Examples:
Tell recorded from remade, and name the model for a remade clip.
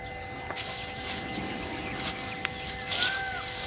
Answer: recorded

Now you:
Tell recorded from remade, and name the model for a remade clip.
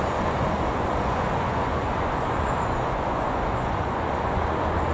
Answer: remade, vocoder, Vocos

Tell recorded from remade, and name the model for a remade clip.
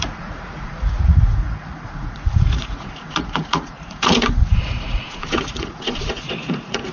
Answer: remade, vocoder, Vocos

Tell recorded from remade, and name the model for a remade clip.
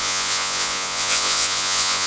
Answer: remade, vocoder, Vocos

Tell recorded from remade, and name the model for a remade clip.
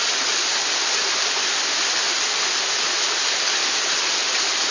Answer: recorded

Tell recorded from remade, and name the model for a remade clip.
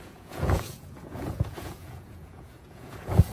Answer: remade, vocoder, Vocos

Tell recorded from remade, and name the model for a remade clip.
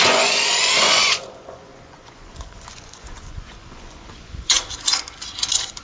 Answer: remade, vocoder, Vocos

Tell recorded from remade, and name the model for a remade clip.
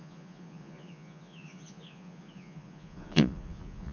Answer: remade, vocoder, Vocos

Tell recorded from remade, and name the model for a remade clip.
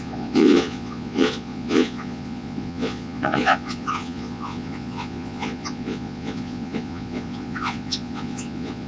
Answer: remade, vocoder, Vocos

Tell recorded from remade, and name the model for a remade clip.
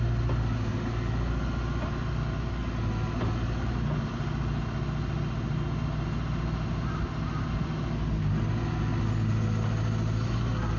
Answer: recorded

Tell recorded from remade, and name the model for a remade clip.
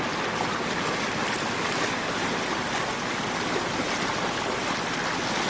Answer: recorded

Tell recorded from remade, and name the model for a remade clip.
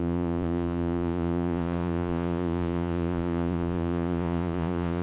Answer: remade, vocoder, Vocos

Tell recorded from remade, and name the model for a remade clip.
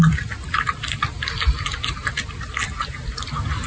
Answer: recorded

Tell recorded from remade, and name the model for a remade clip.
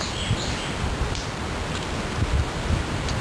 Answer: recorded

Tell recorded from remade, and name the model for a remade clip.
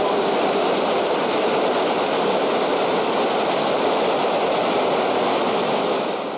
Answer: recorded